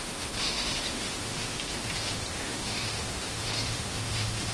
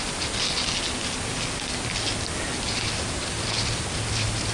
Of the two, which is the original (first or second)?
second